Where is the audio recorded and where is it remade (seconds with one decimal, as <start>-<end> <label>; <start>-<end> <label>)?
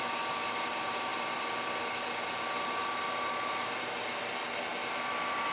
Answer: 0.0-5.5 recorded